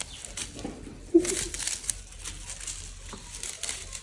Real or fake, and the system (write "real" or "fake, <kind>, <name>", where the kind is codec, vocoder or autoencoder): real